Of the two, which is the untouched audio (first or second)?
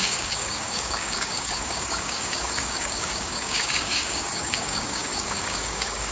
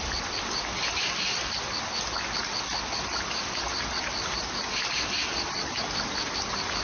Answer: second